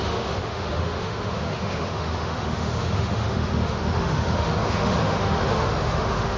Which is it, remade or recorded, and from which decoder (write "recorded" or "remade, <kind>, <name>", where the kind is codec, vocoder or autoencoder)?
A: remade, autoencoder, DAC-VAE